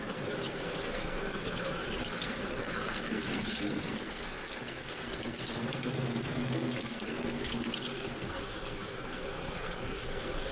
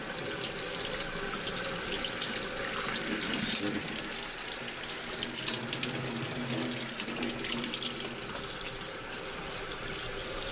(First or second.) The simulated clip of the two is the first